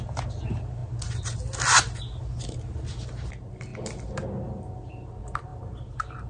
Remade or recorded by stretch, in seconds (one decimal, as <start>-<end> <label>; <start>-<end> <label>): 0.0-6.3 recorded